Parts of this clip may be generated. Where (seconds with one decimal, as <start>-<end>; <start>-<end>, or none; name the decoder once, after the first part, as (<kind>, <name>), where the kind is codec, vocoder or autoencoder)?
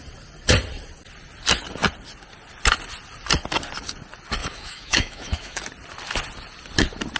4.4-5.6 (autoencoder, DAC-VAE)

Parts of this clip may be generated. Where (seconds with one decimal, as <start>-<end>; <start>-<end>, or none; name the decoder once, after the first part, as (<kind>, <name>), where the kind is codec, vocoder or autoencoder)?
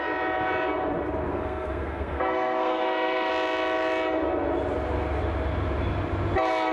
1.3-3.3 (codec, SNAC)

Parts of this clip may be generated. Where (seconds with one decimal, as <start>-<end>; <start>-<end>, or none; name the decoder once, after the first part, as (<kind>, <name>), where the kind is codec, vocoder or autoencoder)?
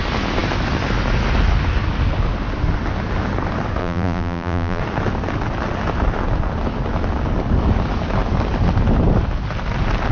3.8-4.8 (vocoder, BigVGAN v2)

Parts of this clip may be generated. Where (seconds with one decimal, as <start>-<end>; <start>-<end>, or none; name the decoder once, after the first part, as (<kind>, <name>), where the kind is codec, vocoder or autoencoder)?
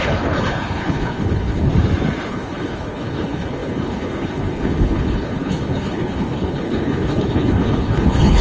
0.0-1.7 (codec, HILCodec); 2.3-8.4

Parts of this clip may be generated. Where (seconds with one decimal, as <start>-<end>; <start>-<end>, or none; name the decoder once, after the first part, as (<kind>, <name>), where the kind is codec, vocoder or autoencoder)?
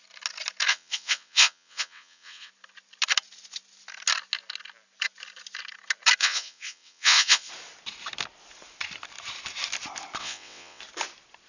0.7-2.5 (vocoder, WaveNeXt); 6.2-7.5; 10.2-10.8